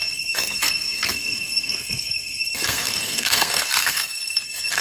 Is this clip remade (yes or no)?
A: yes